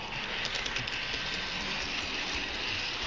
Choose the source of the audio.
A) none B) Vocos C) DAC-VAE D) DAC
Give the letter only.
A